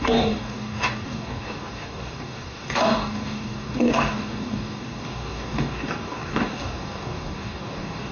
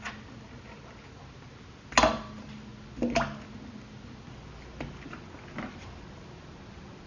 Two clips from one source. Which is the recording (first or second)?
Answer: second